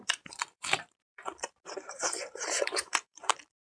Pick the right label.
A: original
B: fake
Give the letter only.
B